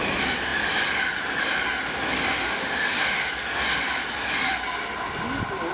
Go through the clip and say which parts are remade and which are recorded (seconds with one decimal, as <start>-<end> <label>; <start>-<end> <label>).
0.0-2.3 recorded; 2.3-3.3 remade; 3.3-5.7 recorded